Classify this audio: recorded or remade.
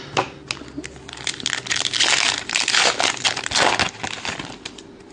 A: recorded